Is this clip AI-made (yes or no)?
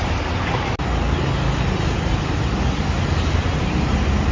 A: no